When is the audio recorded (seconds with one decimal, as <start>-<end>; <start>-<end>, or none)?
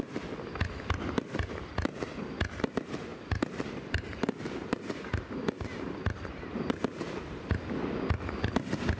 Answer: 0.0-3.1; 7.9-9.0